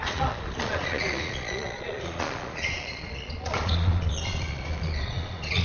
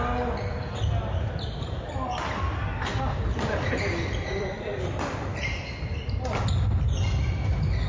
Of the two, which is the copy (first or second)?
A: first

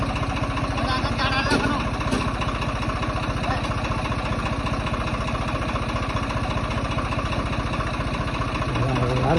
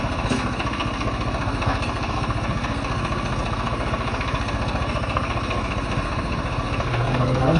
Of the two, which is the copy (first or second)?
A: second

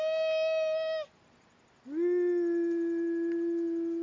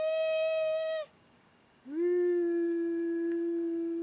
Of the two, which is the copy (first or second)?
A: second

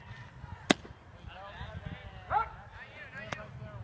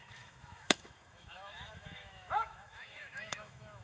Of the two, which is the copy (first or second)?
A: second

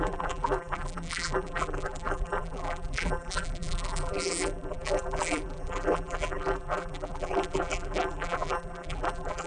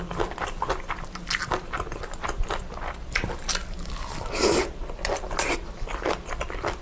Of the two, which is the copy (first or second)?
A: first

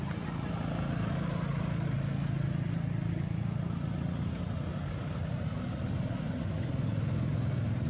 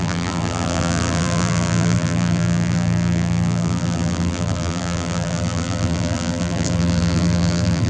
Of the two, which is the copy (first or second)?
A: second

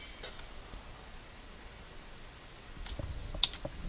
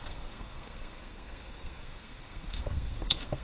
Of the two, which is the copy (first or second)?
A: second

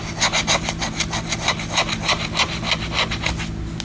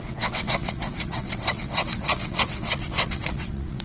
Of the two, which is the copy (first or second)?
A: second